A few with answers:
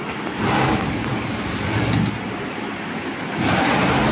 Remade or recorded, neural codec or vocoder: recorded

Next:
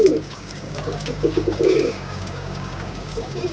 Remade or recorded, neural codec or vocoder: remade, codec, DAC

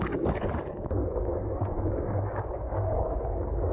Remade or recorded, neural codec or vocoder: remade, codec, DAC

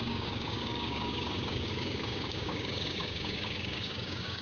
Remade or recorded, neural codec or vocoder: remade, codec, DAC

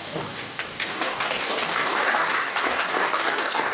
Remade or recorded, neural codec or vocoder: remade, codec, DAC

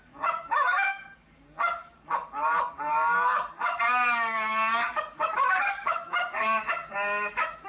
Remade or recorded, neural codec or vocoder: remade, codec, DAC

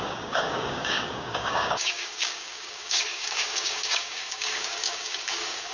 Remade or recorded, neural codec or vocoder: remade, codec, DAC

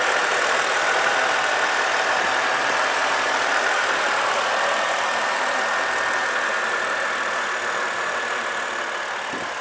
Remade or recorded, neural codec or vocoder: recorded